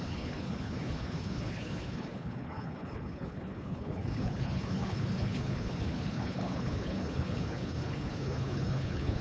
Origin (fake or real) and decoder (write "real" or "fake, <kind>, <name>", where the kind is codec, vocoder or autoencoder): fake, codec, HILCodec